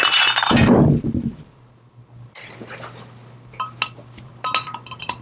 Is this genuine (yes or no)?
yes